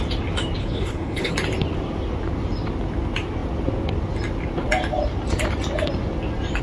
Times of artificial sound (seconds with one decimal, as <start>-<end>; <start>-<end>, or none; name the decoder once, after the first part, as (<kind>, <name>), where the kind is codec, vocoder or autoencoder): 0.6-1.3 (codec, HILCodec)